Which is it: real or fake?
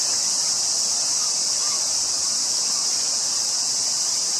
real